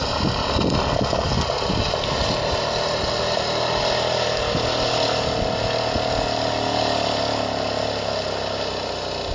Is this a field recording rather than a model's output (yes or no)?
yes